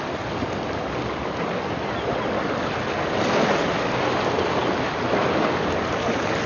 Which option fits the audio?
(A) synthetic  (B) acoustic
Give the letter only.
B